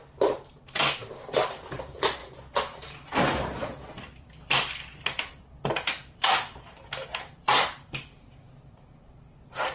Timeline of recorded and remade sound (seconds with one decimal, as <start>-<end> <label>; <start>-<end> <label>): 0.0-9.7 remade